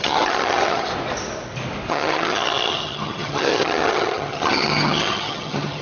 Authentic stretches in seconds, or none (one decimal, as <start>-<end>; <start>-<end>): 0.9-1.9

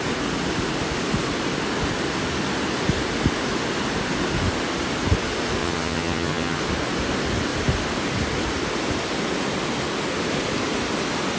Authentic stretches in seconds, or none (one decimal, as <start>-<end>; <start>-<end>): 0.0-5.6; 6.6-11.4

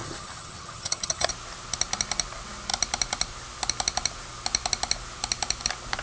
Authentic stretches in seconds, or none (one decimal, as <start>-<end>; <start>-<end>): 1.3-6.0